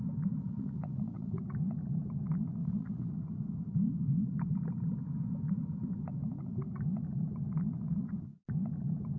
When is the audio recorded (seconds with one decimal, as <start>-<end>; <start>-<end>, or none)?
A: 0.0-0.4; 1.4-2.6; 3.1-9.2

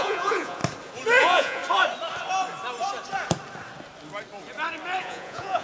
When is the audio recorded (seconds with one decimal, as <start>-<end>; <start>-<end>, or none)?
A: 0.6-1.2; 1.6-5.0